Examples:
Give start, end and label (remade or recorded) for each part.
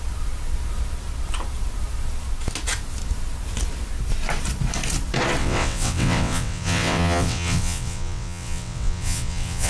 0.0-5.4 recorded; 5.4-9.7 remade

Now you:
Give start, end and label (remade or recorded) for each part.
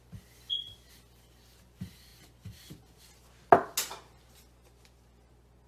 0.0-5.7 recorded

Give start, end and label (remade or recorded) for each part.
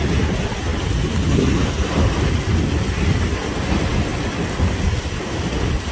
0.0-5.9 recorded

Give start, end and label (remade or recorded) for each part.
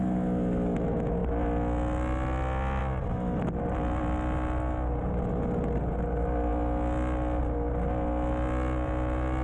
0.0-9.4 recorded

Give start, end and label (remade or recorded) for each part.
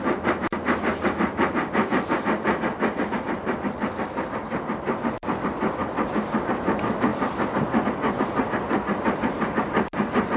0.0-10.4 recorded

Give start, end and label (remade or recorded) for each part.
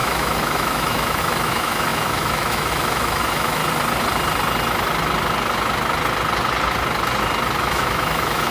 0.0-3.6 remade; 3.6-7.6 recorded; 7.6-8.5 remade